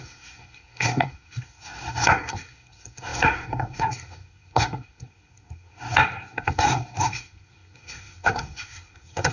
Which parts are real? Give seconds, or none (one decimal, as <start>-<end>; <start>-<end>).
none